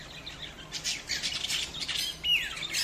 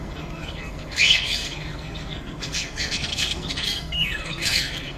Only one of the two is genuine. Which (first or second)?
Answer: first